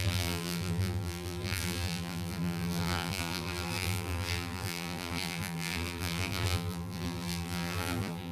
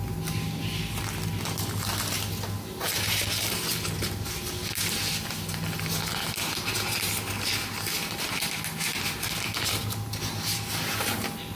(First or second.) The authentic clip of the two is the second